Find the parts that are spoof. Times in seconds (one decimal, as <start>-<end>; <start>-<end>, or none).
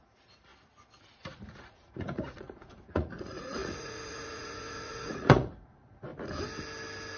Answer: 0.0-0.5; 1.5-6.1